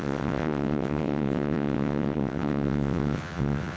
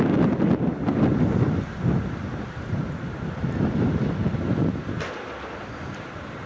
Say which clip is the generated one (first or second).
first